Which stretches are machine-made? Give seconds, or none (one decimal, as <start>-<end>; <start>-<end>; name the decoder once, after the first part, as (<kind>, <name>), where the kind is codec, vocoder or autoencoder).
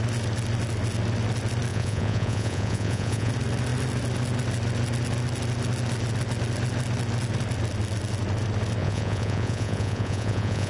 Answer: 1.7-3.3 (vocoder, Vocos); 8.8-10.7